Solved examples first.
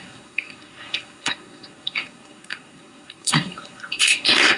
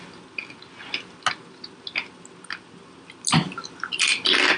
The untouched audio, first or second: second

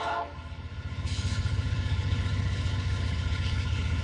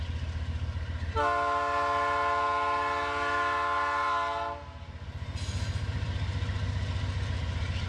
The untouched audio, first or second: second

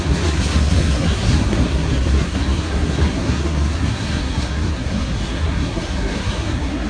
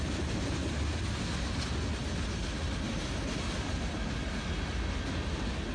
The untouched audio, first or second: second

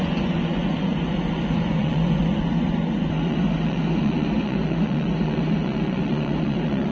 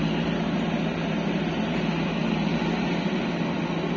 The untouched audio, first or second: second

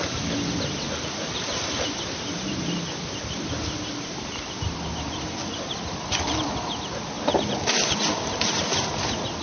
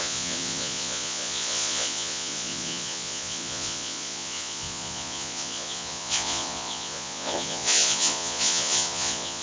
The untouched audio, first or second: first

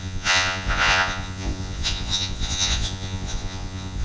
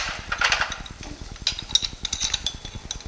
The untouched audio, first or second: second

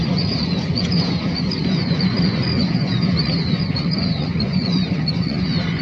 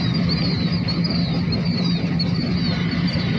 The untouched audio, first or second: second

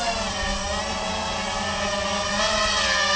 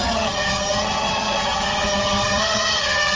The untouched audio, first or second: first